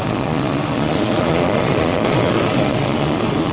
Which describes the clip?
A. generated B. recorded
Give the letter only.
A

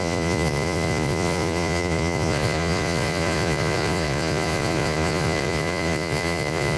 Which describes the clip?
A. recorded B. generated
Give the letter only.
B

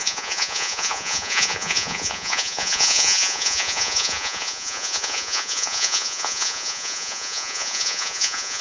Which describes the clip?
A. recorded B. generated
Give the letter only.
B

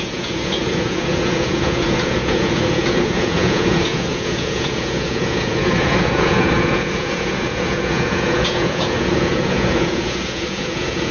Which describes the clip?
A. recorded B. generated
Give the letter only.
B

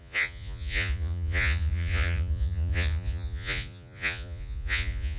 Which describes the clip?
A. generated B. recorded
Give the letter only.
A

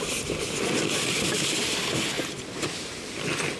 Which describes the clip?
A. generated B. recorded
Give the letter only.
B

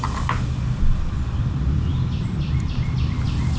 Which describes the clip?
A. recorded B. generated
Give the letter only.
A